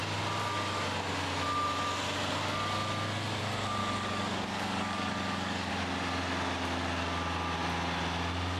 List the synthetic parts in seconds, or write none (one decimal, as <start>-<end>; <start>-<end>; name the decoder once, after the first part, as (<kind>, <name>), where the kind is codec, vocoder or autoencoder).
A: 3.8-5.7 (codec, DAC)